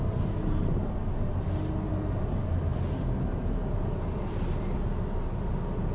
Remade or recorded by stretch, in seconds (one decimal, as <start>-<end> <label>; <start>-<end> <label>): 0.0-5.9 recorded